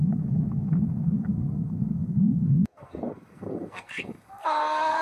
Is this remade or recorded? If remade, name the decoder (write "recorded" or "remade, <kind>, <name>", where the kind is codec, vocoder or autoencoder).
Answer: remade, codec, SNAC